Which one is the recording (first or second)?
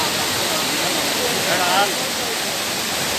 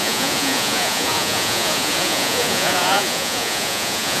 first